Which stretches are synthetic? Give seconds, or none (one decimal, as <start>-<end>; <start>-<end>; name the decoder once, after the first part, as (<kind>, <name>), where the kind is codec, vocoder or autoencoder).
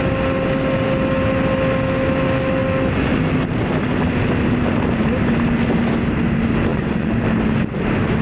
6.7-7.2 (vocoder, Vocos)